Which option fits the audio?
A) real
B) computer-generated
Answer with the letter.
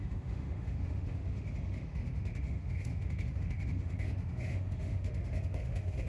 B